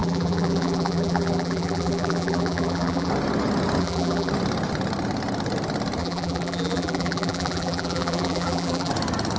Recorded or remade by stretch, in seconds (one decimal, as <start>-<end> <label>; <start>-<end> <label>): 0.0-3.1 remade; 3.1-3.8 recorded; 3.8-4.3 remade; 4.3-6.0 recorded; 6.0-8.9 remade; 8.9-9.4 recorded

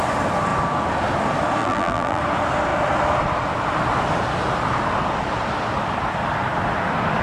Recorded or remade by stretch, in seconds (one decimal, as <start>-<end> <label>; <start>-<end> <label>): 0.0-1.6 recorded; 1.6-2.2 remade; 2.2-7.2 recorded

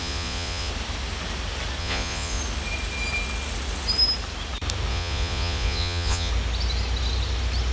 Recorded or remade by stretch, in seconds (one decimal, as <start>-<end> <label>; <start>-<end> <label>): 0.0-0.7 remade; 0.7-1.8 recorded; 1.8-2.4 remade; 2.4-4.9 recorded; 4.9-6.3 remade; 6.3-7.7 recorded